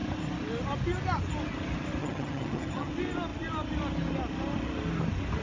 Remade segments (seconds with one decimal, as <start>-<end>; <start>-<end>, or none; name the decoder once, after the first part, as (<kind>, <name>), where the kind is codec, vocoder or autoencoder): 2.0-2.9 (vocoder, HiFi-GAN)